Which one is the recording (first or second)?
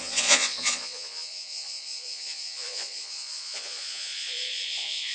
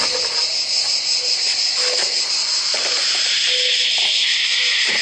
second